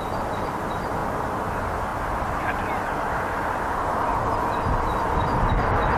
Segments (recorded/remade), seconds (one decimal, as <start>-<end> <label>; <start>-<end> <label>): 0.0-6.0 recorded